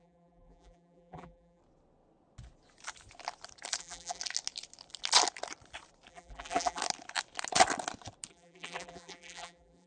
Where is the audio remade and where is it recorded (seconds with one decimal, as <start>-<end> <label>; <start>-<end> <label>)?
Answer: 0.0-1.6 remade; 1.6-3.8 recorded; 3.8-4.2 remade; 4.2-6.1 recorded; 6.1-6.8 remade; 6.8-8.3 recorded; 8.3-9.9 remade